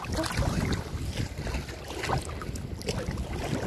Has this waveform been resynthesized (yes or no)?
no